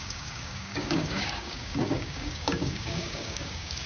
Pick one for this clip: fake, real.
fake